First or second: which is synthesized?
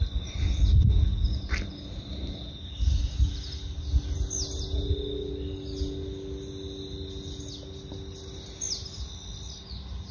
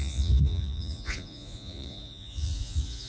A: second